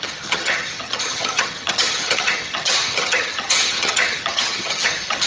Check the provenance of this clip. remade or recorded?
remade